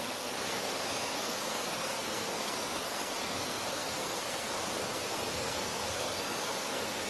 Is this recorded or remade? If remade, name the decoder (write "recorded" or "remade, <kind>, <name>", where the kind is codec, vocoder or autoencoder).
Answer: remade, codec, SNAC